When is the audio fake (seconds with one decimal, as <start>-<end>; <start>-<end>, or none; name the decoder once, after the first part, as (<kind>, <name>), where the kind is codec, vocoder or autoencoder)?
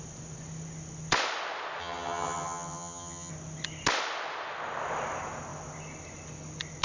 1.8-3.3 (vocoder, HiFi-GAN)